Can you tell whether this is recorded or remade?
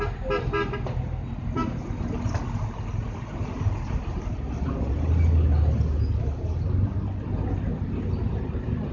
recorded